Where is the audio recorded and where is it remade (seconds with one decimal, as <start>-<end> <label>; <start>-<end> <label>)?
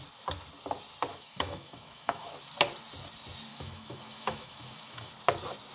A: 0.0-1.1 recorded; 1.1-2.3 remade; 2.3-3.5 recorded; 3.5-5.1 remade; 5.1-5.7 recorded